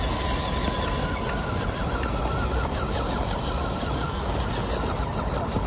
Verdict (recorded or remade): recorded